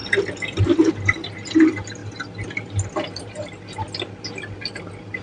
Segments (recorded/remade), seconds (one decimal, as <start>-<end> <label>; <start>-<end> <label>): 0.0-5.2 recorded